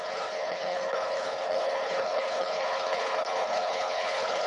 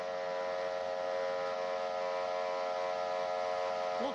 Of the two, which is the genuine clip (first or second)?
second